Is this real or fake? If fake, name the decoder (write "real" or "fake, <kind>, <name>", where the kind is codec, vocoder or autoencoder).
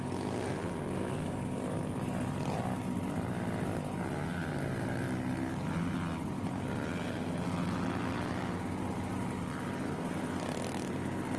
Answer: real